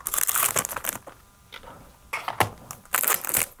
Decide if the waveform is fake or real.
real